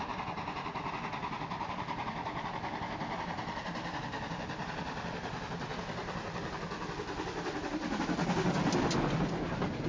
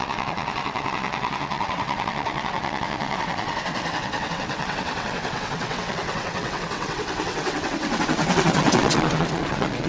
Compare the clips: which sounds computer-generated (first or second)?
second